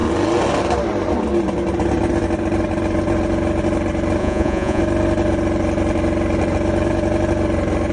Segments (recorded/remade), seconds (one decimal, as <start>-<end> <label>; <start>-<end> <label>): 0.0-4.2 recorded; 4.2-4.8 remade; 4.8-7.9 recorded